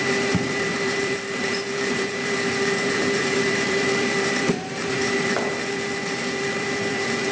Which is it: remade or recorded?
remade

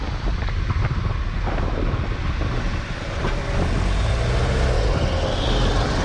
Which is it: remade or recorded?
recorded